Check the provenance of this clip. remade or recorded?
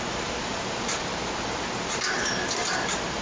recorded